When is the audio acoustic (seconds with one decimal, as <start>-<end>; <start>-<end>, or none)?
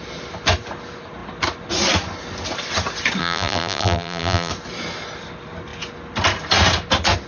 0.0-3.2; 4.5-7.3